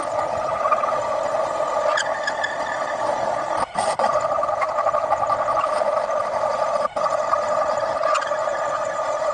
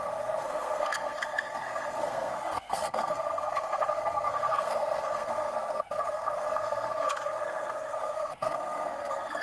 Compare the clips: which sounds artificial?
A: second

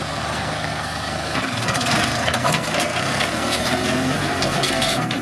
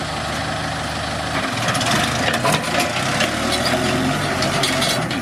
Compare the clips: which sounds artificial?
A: first